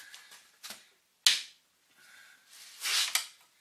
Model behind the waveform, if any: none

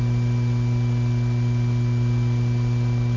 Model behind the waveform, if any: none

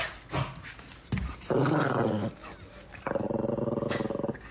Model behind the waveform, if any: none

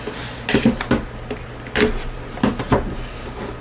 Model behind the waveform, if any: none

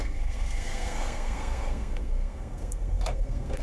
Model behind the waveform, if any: codec, SNAC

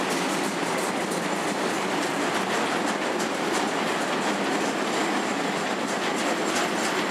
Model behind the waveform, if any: none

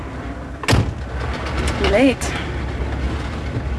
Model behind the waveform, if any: none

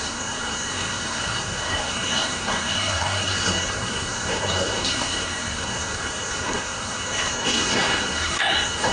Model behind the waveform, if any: codec, SNAC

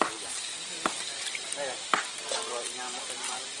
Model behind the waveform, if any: none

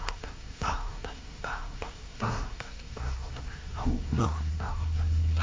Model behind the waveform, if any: codec, SNAC